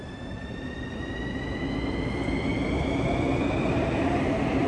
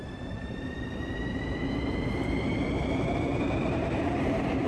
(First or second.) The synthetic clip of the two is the second